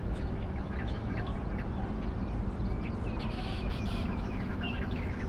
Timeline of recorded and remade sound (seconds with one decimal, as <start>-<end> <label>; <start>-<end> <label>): 0.0-1.3 remade; 1.3-3.3 recorded; 3.3-5.3 remade